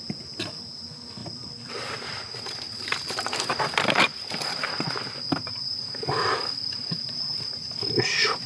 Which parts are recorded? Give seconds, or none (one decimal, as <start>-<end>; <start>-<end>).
0.0-8.5